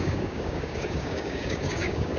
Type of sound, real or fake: fake